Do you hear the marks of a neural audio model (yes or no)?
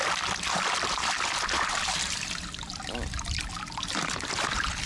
no